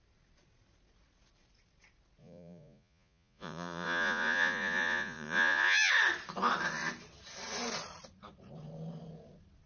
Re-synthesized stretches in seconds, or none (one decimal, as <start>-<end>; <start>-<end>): 2.2-5.9